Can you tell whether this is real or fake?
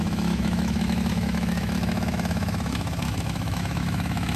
fake